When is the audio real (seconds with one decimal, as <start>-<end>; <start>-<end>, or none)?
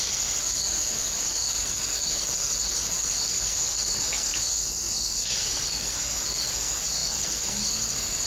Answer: none